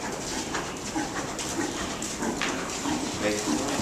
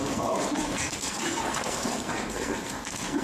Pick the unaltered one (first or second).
first